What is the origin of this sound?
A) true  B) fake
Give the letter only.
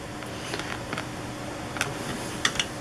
A